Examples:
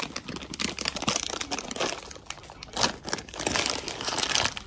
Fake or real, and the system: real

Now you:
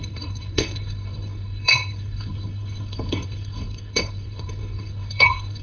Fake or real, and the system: fake, codec, SNAC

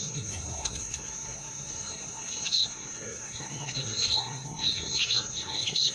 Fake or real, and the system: fake, codec, SNAC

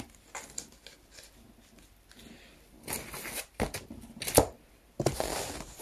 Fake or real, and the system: real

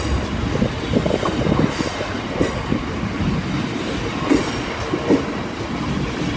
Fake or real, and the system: real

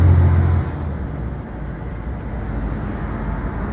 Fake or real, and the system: real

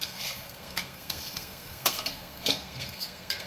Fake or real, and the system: fake, codec, SNAC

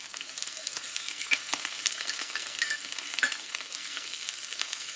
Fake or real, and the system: fake, codec, SNAC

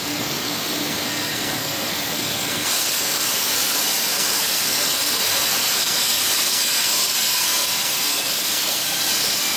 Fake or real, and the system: fake, codec, SNAC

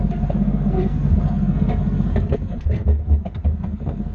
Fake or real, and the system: fake, codec, SNAC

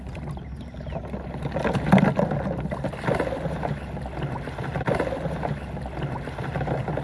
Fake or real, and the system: real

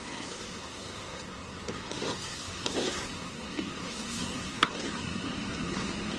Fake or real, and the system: fake, codec, SNAC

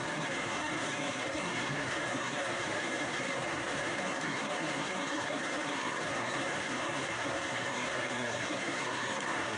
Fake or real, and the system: fake, codec, SNAC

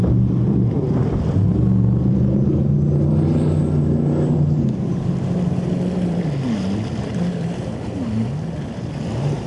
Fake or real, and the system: real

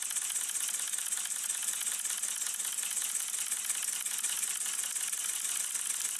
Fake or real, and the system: real